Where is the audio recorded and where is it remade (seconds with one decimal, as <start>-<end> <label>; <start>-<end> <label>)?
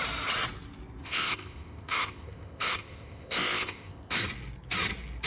0.0-1.0 recorded; 1.0-4.2 remade; 4.2-5.3 recorded